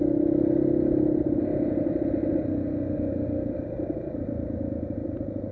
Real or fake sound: real